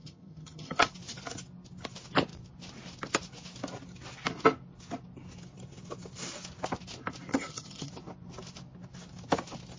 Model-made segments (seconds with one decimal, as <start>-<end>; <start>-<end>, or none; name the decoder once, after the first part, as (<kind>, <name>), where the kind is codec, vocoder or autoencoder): 0.0-0.9 (vocoder, HiFi-GAN); 7.3-7.9